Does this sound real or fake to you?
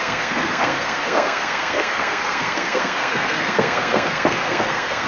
fake